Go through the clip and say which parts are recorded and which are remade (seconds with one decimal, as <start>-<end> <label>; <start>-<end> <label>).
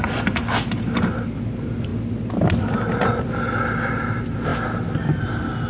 0.0-5.7 recorded